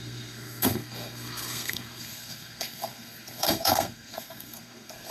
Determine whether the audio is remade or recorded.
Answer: remade